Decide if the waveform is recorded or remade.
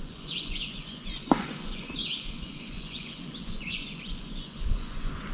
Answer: remade